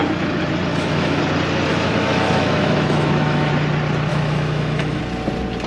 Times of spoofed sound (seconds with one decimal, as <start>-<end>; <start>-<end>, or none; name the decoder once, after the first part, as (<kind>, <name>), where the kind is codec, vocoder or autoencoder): 0.7-1.2 (autoencoder, DAC-VAE); 1.7-3.5; 4.1-5.0